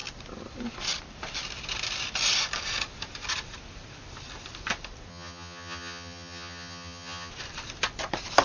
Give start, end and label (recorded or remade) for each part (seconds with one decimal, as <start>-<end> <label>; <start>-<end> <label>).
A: 0.0-5.1 recorded; 5.1-7.3 remade; 7.3-8.4 recorded